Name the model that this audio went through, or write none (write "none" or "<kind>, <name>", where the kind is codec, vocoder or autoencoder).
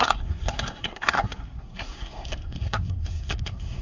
codec, SNAC